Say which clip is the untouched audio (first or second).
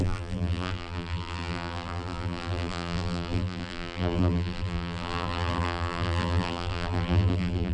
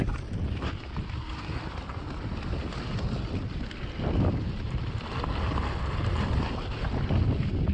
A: second